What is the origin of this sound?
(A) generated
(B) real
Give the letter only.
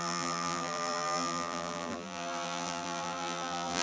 A